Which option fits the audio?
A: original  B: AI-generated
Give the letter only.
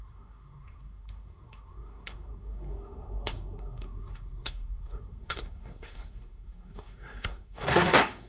B